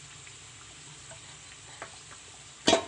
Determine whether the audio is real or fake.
real